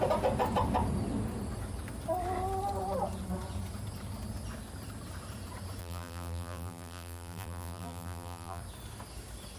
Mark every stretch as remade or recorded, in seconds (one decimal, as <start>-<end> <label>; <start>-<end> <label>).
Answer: 0.0-5.8 recorded; 5.8-8.6 remade; 8.6-9.6 recorded